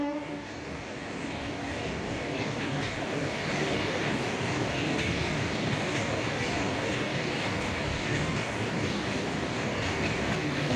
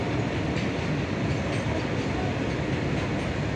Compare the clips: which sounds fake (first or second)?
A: first